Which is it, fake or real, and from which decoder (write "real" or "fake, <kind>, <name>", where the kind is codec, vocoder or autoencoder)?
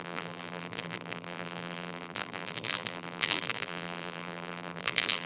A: fake, vocoder, BigVGAN v2